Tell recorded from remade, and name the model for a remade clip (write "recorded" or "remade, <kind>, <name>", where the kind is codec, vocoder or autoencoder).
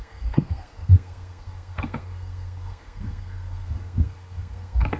remade, codec, SNAC